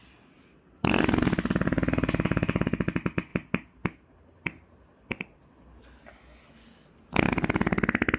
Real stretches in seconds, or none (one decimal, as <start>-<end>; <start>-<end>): 0.0-8.2